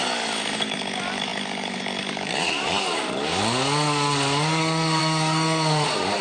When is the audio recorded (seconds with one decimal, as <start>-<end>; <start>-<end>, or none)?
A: none